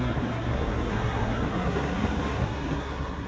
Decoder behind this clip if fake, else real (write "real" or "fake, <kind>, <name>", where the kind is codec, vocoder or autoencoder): fake, codec, SNAC